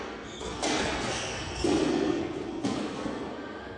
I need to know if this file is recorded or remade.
remade